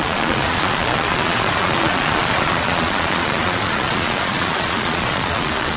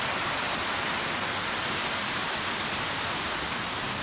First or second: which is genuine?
second